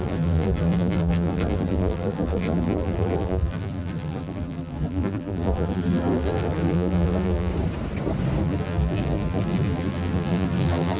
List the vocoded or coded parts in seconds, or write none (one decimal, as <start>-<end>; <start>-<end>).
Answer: 0.0-7.5; 8.4-11.0